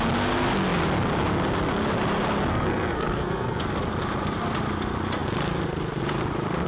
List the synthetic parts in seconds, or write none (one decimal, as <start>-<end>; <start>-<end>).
2.5-3.6